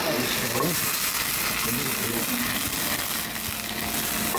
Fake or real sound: real